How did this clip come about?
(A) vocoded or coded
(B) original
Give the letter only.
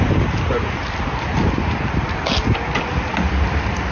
B